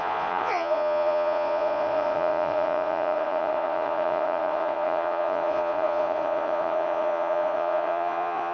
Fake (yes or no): yes